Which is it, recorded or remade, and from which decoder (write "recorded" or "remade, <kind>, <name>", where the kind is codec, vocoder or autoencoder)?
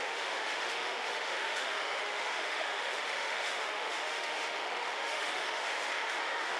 remade, autoencoder, DAC-VAE